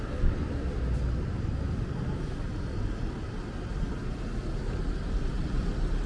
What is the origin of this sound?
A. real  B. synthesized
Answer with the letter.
A